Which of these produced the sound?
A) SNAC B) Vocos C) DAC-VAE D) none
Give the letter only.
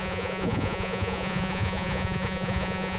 B